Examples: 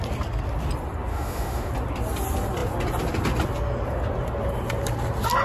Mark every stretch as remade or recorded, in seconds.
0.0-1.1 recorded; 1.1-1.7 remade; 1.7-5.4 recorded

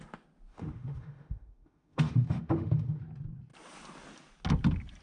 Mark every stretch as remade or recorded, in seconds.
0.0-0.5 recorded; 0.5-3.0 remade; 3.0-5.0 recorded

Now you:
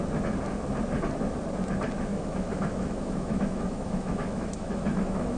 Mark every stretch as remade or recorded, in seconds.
0.0-2.1 recorded; 2.1-5.4 remade

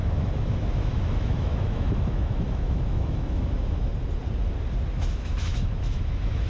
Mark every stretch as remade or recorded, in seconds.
0.0-3.9 remade; 3.9-4.9 recorded; 4.9-6.5 remade

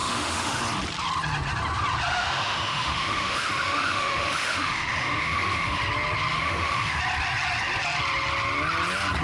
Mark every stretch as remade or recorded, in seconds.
0.0-0.6 remade; 0.6-2.1 recorded; 2.1-5.8 remade; 5.8-6.3 recorded; 6.3-7.0 remade; 7.0-9.2 recorded

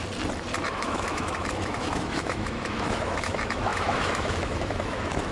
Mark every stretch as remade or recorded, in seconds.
0.0-0.7 recorded; 0.7-5.3 remade

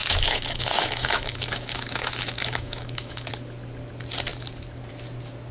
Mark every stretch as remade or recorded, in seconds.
0.0-3.3 remade; 3.3-5.5 recorded

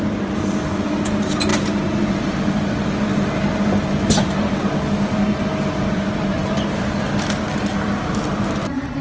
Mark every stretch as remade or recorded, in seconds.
0.0-9.0 recorded